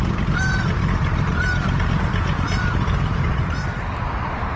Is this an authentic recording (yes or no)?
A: no